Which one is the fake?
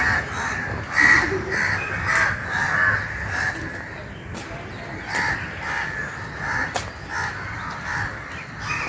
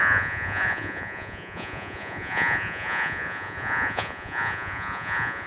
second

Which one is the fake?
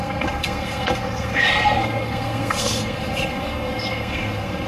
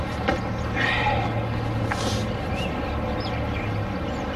first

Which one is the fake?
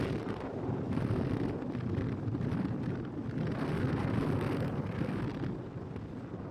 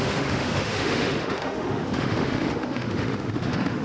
second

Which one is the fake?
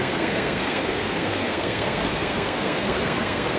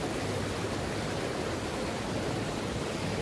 first